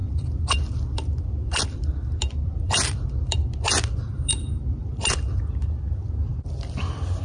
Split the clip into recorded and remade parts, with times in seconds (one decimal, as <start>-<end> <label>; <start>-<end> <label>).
0.0-4.3 remade; 4.3-4.8 recorded; 4.8-5.4 remade; 5.4-7.2 recorded